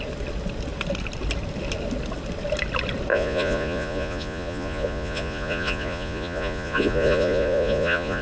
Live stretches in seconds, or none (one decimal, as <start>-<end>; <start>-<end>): 0.0-3.1